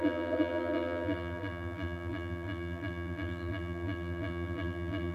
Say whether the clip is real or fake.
fake